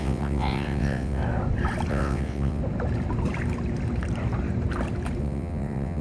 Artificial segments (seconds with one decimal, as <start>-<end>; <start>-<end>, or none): 0.0-1.2; 1.9-2.6; 5.2-6.0